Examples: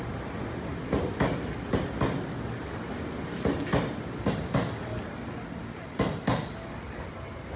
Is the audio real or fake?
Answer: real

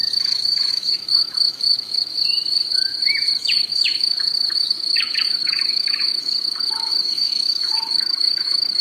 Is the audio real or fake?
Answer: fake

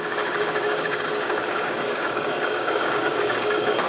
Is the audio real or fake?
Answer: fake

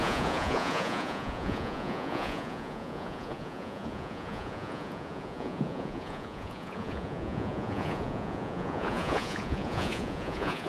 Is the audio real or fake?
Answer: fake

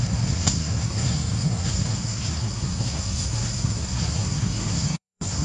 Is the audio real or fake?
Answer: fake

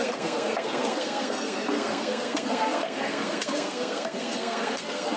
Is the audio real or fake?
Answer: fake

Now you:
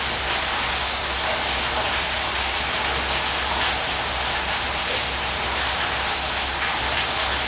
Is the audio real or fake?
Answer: real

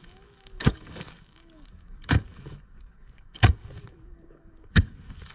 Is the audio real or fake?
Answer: fake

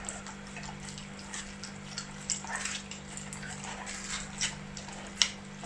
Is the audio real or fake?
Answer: real